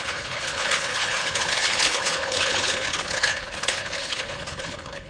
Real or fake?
fake